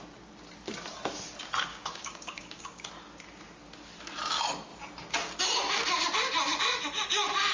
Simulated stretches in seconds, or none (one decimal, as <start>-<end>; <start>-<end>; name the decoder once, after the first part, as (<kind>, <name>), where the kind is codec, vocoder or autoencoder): 1.7-2.9 (codec, DAC)